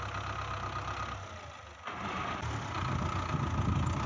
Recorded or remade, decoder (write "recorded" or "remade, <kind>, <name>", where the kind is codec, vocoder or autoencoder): recorded